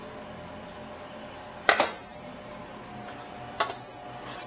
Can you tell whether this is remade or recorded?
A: recorded